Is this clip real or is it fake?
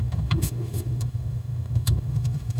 fake